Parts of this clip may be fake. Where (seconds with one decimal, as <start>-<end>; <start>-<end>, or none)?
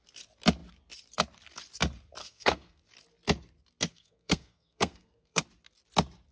2.2-2.8; 3.9-5.4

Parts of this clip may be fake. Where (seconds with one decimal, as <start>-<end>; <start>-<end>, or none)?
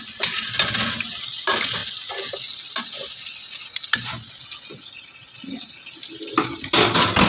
none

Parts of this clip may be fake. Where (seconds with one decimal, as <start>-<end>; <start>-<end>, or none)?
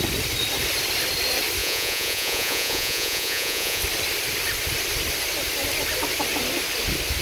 1.6-3.8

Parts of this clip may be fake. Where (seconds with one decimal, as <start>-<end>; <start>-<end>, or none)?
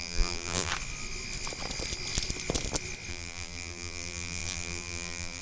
0.0-0.7; 3.1-5.4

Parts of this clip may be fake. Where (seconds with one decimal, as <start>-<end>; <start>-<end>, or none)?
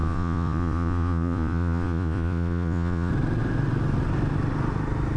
0.0-3.1